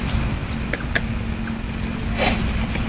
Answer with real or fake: real